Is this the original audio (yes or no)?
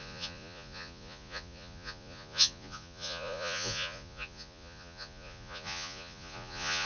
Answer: no